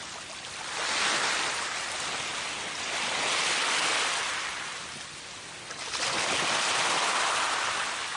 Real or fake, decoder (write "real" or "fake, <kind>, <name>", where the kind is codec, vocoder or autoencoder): real